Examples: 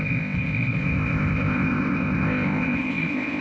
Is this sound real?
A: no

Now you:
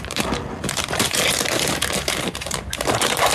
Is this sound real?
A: no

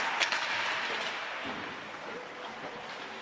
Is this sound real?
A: yes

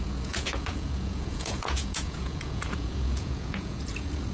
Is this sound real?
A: no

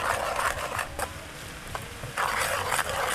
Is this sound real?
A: no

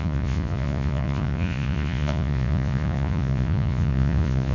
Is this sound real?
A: no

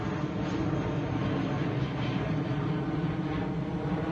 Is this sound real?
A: yes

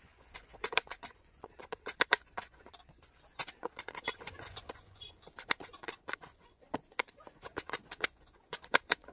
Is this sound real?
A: no